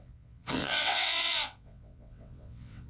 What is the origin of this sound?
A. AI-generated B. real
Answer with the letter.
A